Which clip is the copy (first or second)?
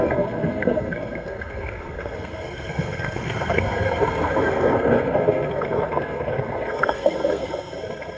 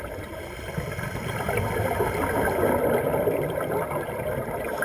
first